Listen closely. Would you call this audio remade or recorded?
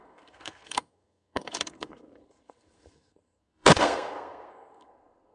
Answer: remade